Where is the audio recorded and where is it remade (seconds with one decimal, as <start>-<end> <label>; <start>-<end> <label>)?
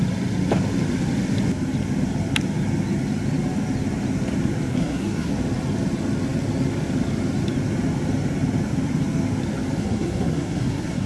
0.0-4.7 recorded; 4.7-5.3 remade; 5.3-9.8 recorded; 9.8-11.1 remade